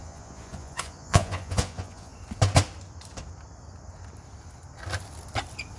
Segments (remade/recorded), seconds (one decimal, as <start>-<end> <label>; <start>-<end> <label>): 0.0-2.1 remade; 2.1-5.8 recorded